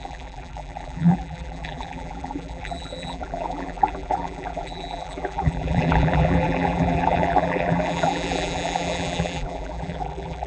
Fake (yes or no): yes